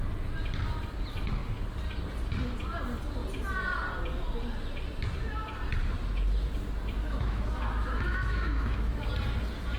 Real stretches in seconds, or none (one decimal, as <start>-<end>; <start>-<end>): 0.0-7.0; 8.9-9.8